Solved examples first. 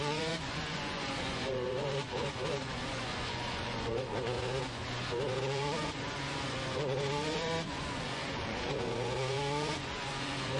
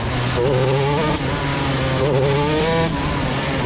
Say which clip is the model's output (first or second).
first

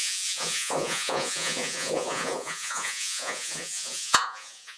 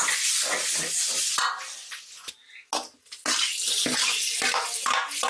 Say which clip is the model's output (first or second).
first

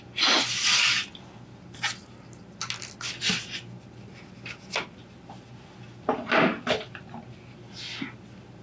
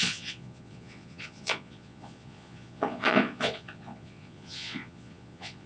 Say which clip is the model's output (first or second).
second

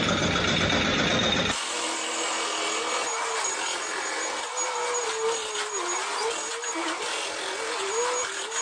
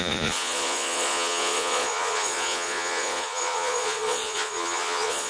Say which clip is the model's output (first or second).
second